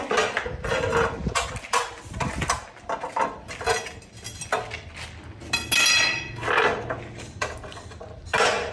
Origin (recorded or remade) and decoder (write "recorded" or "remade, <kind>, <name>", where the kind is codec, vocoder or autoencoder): recorded